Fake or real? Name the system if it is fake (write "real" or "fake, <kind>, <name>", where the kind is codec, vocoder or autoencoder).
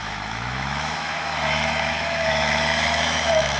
fake, autoencoder, DAC-VAE